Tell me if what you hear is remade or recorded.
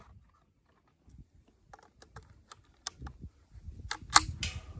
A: recorded